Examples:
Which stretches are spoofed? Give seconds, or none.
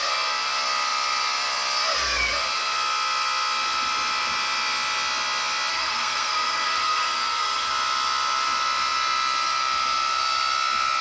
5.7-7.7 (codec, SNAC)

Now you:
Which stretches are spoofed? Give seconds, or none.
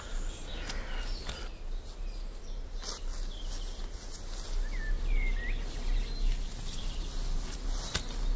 none